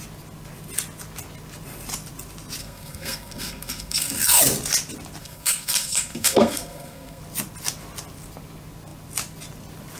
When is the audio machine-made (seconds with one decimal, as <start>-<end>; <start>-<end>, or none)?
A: 2.6-4.4; 5.2-7.2